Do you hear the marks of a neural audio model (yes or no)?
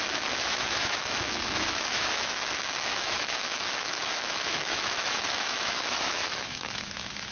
yes